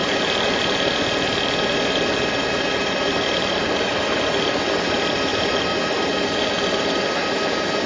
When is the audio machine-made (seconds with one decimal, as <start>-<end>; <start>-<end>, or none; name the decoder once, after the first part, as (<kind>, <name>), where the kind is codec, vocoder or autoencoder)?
none